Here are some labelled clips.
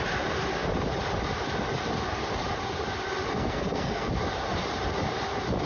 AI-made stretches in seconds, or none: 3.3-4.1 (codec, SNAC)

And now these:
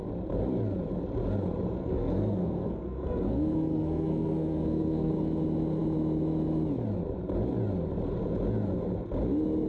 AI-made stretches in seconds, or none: 1.8-5.1 (codec, SNAC)

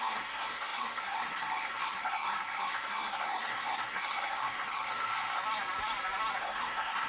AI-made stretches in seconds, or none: 0.0-5.4 (codec, SNAC); 6.4-7.1

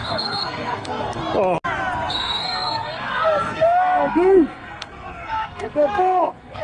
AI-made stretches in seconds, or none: 0.0-1.2 (codec, SNAC); 2.1-6.6

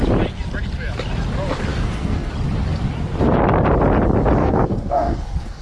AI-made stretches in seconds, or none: 1.7-2.3 (codec, SNAC); 4.4-5.6

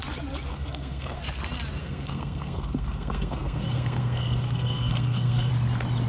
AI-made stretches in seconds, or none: 0.5-1.2 (codec, SNAC); 1.8-5.5